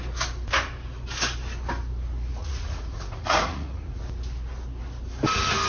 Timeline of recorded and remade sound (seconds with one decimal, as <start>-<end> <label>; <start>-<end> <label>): 0.0-2.4 recorded; 2.4-4.0 remade; 4.0-5.7 recorded